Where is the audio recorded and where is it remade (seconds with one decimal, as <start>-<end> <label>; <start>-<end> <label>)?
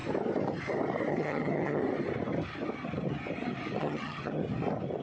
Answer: 0.0-1.1 recorded; 1.1-1.8 remade; 1.8-3.8 recorded; 3.8-4.4 remade; 4.4-5.0 recorded